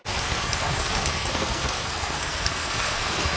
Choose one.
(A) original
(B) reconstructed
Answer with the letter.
B